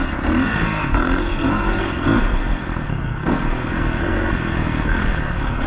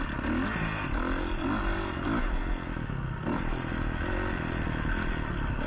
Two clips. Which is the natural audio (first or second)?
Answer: second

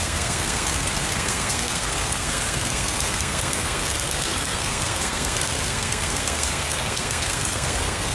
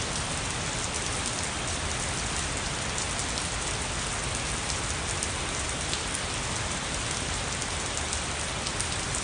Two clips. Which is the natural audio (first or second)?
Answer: second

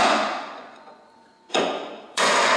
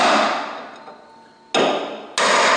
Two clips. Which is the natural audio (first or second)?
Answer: second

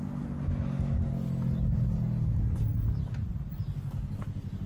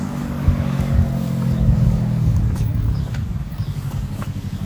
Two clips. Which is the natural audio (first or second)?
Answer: first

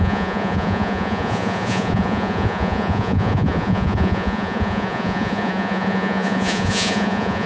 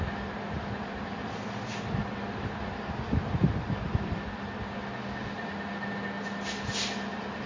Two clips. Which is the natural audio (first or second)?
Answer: second